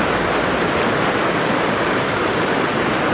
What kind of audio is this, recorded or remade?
recorded